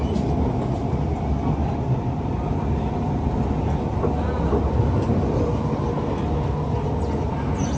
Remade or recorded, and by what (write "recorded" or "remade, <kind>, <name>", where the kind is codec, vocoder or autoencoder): recorded